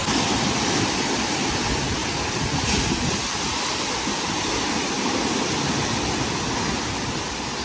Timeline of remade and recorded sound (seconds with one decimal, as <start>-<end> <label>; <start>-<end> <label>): 0.0-7.6 recorded